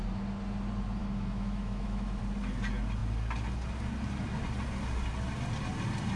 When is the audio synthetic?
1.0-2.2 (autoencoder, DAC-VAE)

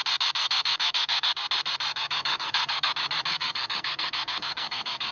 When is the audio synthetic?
0.4-1.3 (codec, SNAC); 1.9-2.9; 3.3-5.1

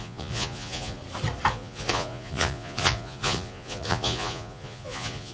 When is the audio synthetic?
0.0-1.0 (vocoder, Vocos); 1.5-5.3

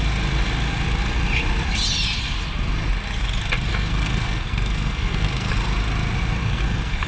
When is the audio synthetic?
3.7-5.5 (codec, SNAC); 6.4-7.1